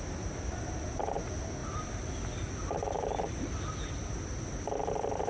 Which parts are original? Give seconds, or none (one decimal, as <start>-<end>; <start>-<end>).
0.0-5.3